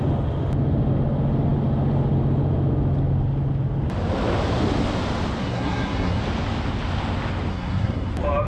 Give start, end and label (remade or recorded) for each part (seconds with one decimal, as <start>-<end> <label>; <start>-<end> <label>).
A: 0.0-5.4 recorded; 5.4-6.2 remade; 6.2-7.5 recorded; 7.5-8.1 remade; 8.1-8.5 recorded